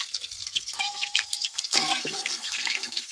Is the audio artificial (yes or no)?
yes